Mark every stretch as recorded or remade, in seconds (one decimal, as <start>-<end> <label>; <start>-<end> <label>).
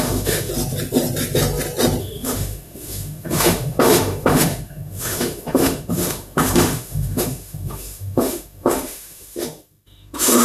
0.0-0.5 remade; 0.5-2.0 recorded; 2.0-10.4 remade